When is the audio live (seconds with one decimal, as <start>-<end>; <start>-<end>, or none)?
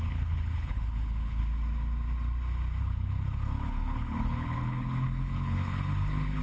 1.4-2.8